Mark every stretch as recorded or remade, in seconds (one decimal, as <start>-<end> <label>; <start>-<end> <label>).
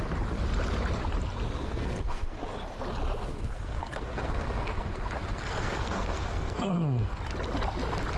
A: 0.0-1.6 recorded; 1.6-2.4 remade; 2.4-3.2 recorded; 3.2-7.2 remade; 7.2-8.2 recorded